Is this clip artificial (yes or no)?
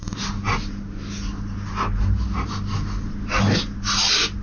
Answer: no